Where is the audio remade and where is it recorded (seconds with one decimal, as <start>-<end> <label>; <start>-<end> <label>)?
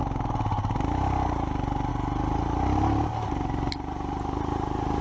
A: 0.0-5.0 recorded